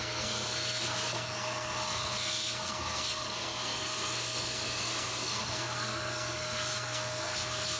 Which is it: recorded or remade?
remade